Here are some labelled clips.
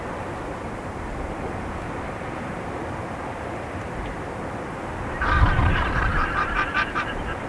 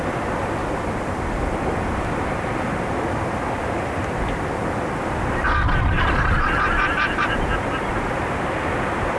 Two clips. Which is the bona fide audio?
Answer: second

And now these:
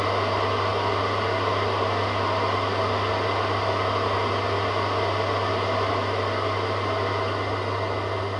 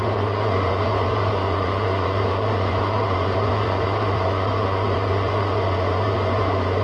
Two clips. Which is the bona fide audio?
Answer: first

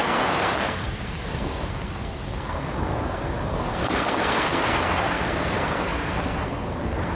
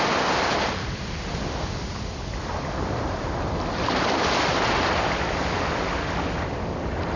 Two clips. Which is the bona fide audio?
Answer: second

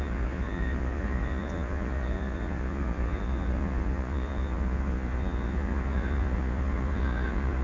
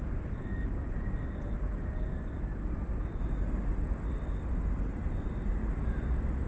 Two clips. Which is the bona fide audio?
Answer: second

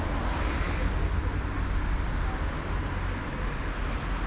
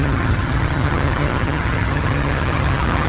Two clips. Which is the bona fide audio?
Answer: first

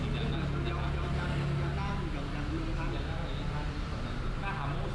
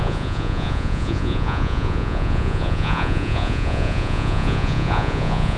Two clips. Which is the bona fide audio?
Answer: first